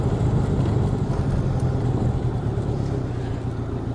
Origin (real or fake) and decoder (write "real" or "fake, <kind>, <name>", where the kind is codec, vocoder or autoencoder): real